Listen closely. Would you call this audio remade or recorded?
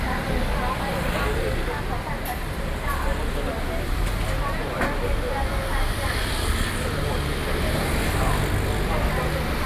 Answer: recorded